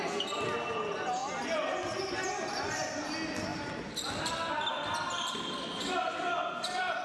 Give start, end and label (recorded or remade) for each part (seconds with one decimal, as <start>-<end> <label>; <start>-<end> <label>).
0.0-7.0 recorded